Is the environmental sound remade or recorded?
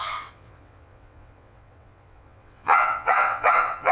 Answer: remade